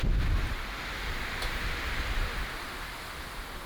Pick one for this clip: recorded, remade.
recorded